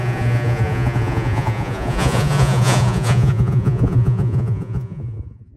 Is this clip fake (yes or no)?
yes